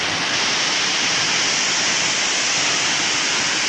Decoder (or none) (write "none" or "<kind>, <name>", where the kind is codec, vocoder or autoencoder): none